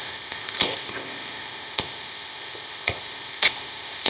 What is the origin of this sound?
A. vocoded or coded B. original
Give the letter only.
A